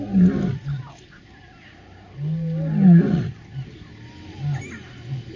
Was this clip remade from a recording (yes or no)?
no